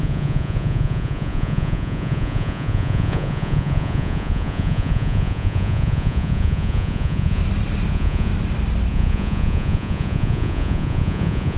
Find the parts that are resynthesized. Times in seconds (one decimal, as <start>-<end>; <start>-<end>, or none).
0.0-7.4; 7.9-8.3; 8.9-11.6